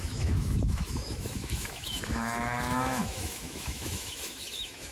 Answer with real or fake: fake